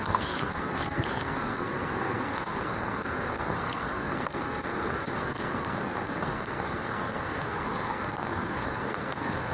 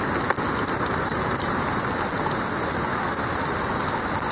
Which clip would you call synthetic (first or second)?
first